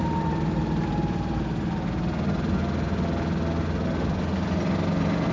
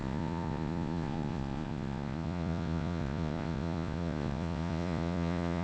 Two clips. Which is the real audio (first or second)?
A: first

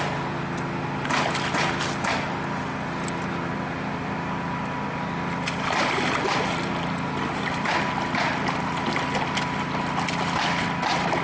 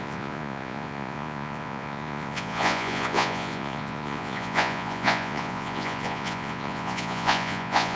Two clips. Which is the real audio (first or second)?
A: first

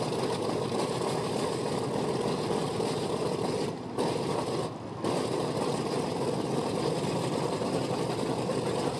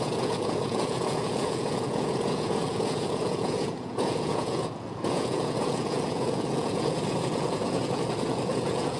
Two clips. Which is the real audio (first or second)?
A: first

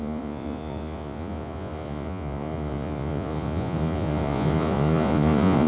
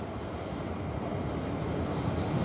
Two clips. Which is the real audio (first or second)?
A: second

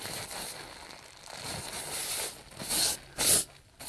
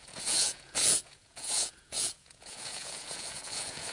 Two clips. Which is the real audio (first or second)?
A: first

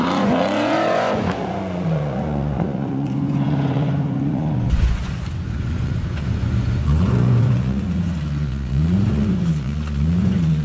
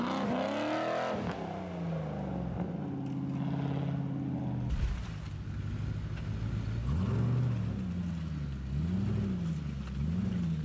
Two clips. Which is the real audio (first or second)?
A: second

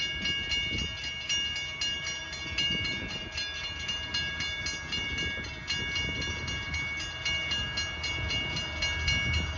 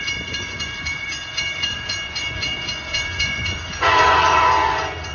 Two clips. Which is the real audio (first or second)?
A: first